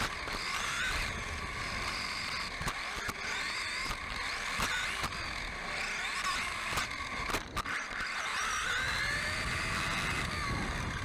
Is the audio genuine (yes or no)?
yes